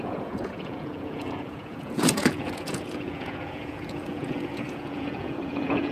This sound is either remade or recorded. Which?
remade